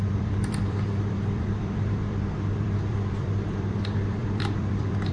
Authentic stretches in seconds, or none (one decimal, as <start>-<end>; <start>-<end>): none

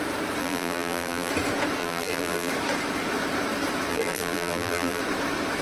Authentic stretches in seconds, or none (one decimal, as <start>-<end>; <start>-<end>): 0.0-0.4; 1.3-1.8; 2.5-3.9; 5.0-5.6